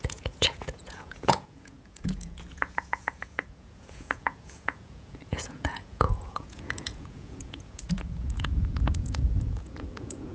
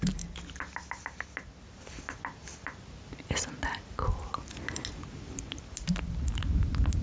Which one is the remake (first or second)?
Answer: first